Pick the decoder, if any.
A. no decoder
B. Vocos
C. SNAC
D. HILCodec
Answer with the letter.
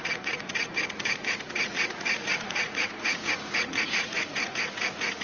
B